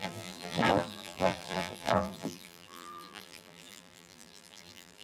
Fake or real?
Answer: fake